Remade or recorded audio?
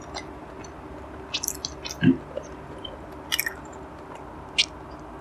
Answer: recorded